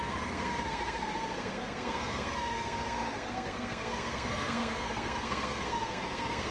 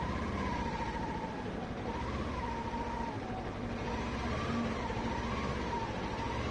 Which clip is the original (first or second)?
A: second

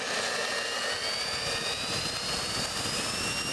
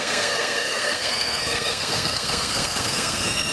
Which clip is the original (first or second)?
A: first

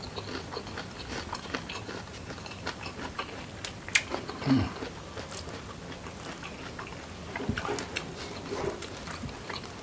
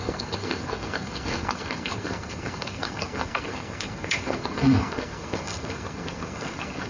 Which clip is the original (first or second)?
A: first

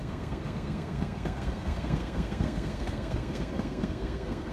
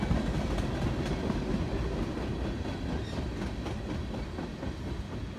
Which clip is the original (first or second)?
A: second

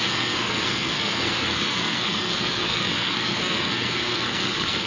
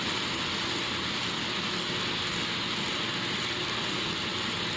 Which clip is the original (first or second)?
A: second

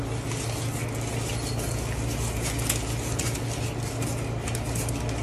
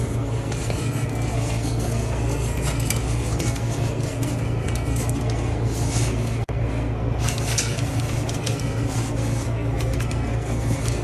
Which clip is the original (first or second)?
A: first